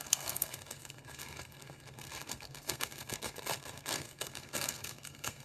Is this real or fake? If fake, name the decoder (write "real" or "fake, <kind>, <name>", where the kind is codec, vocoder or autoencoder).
fake, codec, SNAC